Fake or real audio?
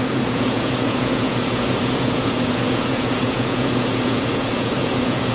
fake